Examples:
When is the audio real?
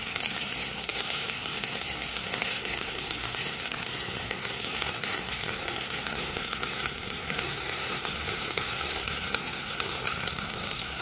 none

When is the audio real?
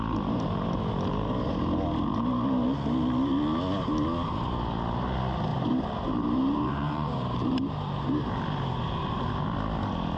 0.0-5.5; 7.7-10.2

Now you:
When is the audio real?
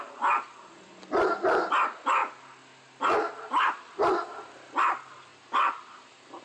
0.0-6.4